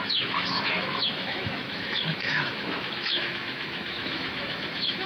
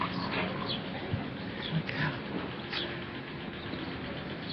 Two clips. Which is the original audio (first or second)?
second